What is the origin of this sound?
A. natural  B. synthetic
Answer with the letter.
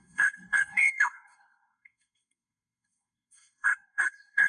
B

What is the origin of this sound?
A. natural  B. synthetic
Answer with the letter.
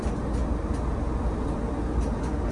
A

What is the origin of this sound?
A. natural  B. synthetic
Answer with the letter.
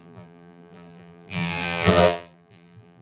B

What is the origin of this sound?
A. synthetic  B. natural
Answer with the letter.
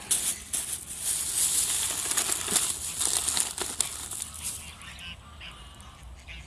B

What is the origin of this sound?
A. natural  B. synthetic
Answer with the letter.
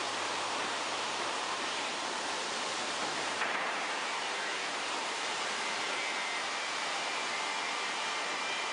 B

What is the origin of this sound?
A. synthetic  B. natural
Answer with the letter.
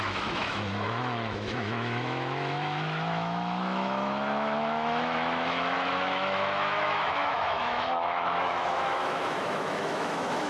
A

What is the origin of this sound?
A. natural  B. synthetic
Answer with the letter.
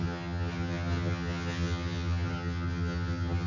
B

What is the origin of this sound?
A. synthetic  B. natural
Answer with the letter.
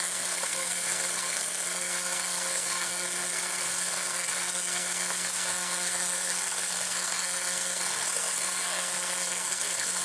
A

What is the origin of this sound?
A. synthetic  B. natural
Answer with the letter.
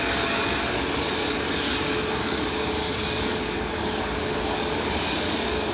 A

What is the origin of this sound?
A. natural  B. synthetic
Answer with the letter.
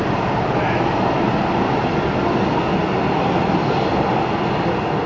A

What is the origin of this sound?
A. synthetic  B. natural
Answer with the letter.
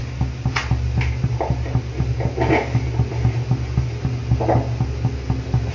B